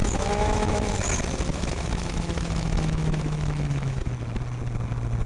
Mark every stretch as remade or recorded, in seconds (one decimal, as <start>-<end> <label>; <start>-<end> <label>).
0.0-0.9 remade; 0.9-1.5 recorded; 1.5-4.1 remade; 4.1-5.3 recorded